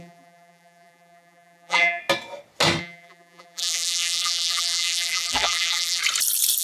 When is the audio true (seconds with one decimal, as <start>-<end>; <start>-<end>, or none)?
2.0-2.8; 6.0-6.6